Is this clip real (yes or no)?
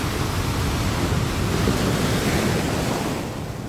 yes